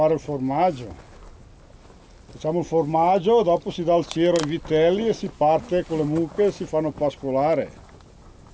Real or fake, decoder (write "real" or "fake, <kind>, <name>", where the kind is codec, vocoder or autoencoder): real